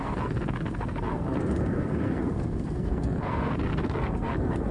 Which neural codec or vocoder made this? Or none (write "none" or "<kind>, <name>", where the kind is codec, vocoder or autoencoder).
codec, SNAC